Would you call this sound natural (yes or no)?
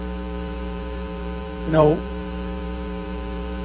no